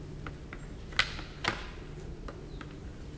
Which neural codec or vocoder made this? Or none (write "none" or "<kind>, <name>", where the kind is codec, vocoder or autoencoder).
none